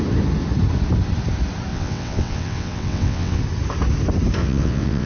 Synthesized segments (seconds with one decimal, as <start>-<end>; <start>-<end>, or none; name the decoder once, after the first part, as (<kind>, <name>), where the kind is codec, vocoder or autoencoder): 1.7-3.4 (vocoder, WaveNeXt); 4.4-5.1